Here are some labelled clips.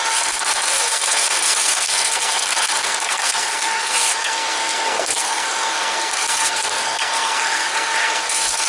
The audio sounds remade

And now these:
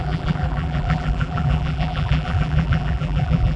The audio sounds remade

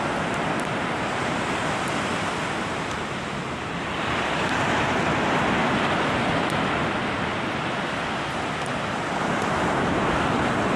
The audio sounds remade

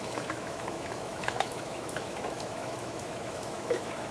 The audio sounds remade